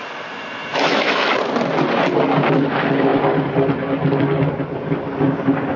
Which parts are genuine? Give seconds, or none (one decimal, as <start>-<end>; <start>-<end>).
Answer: 0.0-0.7; 1.3-5.8